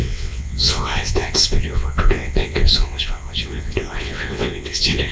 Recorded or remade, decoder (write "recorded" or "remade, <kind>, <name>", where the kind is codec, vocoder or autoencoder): remade, vocoder, WaveNeXt